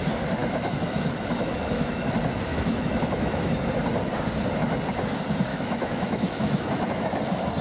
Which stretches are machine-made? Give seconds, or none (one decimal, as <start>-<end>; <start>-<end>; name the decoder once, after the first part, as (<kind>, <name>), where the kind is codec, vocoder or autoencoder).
0.4-2.1 (autoencoder, DAC-VAE); 2.5-3.6; 5.5-6.9